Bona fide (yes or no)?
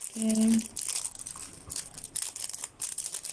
yes